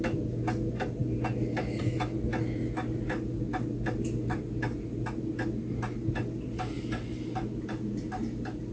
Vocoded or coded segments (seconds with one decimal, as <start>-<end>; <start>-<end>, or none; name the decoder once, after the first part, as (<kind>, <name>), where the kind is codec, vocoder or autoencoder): none